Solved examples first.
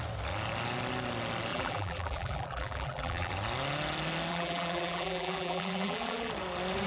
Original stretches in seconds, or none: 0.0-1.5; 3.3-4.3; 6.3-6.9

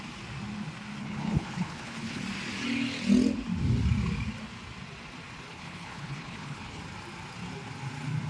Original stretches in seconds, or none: 0.0-1.0; 2.2-5.5; 6.8-8.3

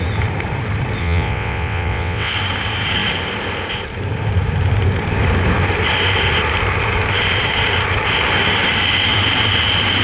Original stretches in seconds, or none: 0.0-1.0; 2.3-10.0

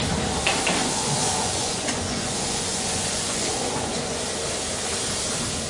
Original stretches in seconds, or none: 0.0-0.8; 4.2-5.7